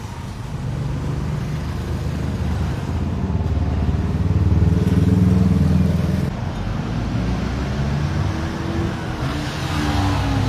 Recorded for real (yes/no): yes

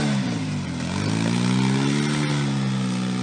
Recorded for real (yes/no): yes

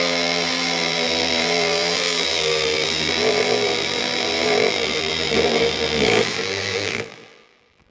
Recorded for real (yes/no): no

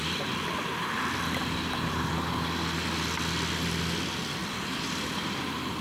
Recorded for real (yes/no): yes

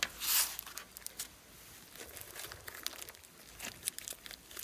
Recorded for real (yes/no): yes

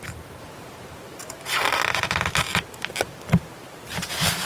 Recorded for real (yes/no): yes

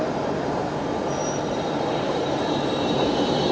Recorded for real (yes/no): no